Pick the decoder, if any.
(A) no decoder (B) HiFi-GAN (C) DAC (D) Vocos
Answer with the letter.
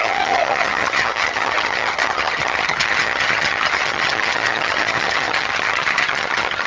B